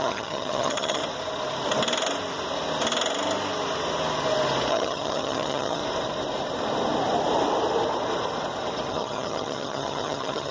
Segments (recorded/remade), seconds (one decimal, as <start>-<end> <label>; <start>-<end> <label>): 0.0-1.0 remade; 1.0-4.7 recorded; 4.7-5.8 remade; 5.8-8.9 recorded; 8.9-10.5 remade